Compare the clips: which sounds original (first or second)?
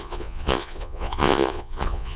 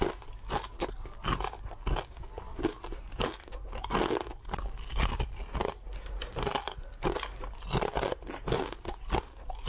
second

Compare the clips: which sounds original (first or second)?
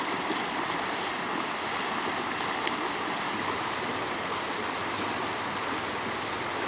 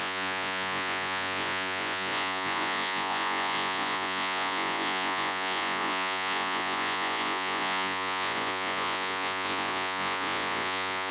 first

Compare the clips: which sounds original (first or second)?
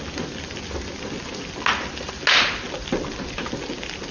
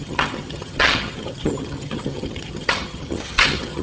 first